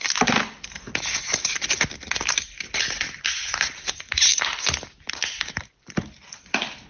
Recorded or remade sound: recorded